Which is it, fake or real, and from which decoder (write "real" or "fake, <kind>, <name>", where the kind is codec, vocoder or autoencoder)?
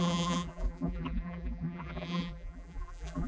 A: fake, vocoder, BigVGAN v2